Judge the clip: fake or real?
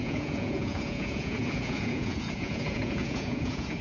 fake